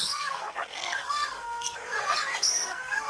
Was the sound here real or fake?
fake